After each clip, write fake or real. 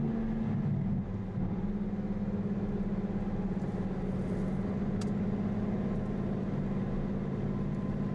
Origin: real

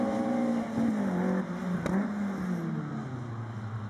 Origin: real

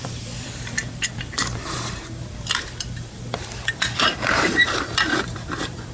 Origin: fake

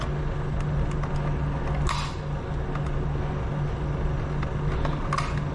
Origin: real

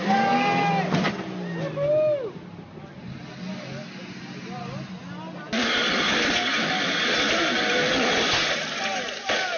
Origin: real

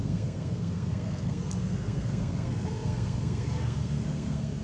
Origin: fake